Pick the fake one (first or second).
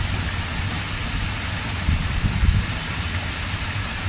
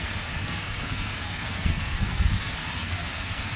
second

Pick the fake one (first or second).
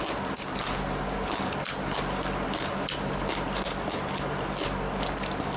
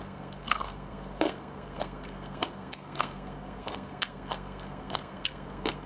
second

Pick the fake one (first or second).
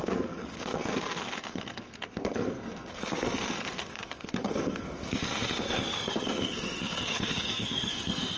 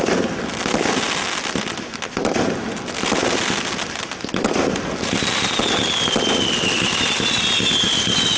first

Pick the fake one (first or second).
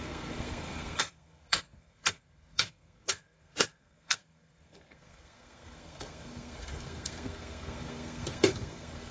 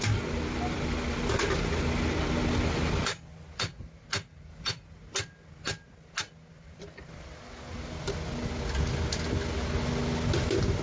first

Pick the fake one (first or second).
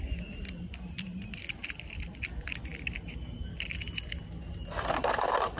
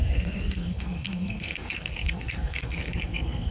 second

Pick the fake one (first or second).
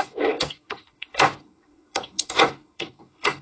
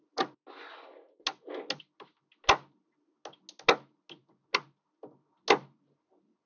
first